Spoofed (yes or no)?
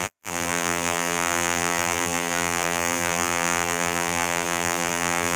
yes